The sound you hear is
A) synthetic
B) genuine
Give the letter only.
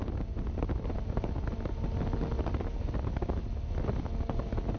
B